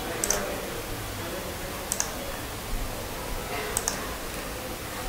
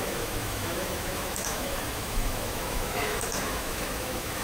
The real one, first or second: first